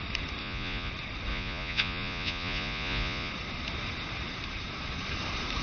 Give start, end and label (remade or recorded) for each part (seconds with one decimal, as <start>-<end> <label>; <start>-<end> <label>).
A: 0.0-0.4 recorded; 0.4-0.9 remade; 0.9-1.3 recorded; 1.3-3.3 remade; 3.3-5.6 recorded